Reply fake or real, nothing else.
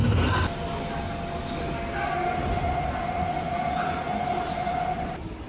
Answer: real